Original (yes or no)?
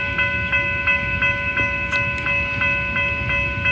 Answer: yes